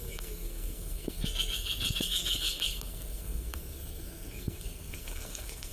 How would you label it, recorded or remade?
remade